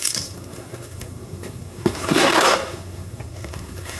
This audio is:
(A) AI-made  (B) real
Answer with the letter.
A